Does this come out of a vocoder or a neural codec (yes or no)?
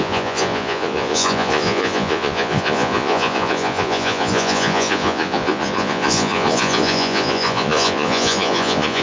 yes